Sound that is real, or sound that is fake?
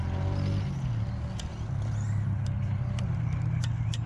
real